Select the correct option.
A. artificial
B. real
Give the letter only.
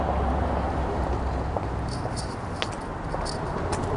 B